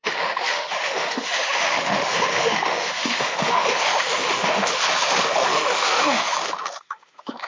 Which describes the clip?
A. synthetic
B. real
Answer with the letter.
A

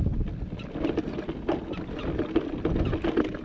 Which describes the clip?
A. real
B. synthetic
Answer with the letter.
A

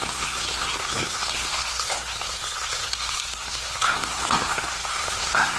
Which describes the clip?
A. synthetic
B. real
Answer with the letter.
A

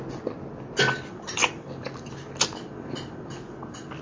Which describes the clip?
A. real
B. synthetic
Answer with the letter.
A